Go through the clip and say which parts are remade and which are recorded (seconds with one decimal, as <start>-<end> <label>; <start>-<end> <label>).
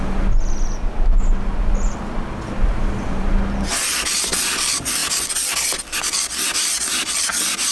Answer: 0.0-7.7 recorded